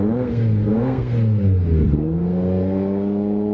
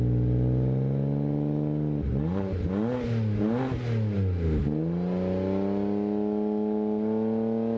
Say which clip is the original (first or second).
second